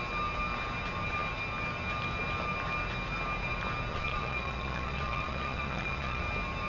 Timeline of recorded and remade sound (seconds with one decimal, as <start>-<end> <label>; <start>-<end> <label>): 0.0-3.9 recorded; 3.9-6.2 remade; 6.2-6.7 recorded

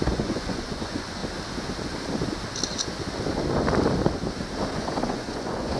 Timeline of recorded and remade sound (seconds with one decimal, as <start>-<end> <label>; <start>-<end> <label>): 0.0-1.2 remade; 1.2-4.7 recorded; 4.7-5.8 remade

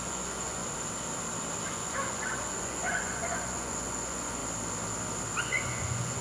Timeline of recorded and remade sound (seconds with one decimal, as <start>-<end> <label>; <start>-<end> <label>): 0.0-0.6 remade; 0.6-1.7 recorded; 1.7-4.4 remade; 4.4-5.4 recorded; 5.4-6.2 remade

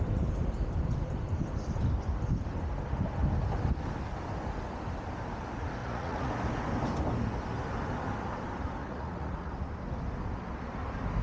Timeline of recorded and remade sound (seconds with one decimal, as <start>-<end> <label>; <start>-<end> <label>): 0.0-5.8 recorded; 5.8-6.3 remade; 6.3-8.8 recorded; 8.8-9.5 remade; 9.5-11.2 recorded

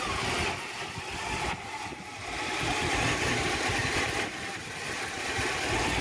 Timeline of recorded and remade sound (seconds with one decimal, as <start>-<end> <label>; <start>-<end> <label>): 0.0-6.0 recorded